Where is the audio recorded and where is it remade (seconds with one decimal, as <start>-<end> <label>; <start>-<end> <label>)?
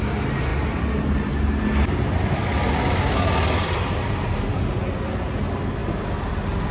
0.0-6.7 recorded